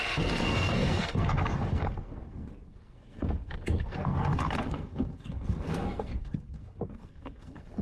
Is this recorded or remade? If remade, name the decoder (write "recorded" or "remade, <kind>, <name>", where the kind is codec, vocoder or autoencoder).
remade, codec, SNAC